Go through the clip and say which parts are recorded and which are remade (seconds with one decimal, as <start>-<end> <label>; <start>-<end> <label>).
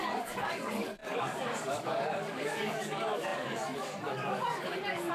0.0-5.1 remade